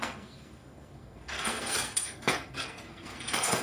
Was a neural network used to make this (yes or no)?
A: yes